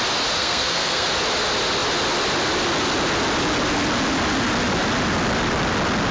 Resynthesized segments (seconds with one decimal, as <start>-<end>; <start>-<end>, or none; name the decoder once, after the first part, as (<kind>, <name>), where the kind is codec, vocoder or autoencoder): 0.4-1.1 (codec, SNAC)